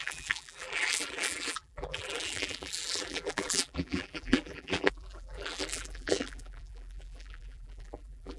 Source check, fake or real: fake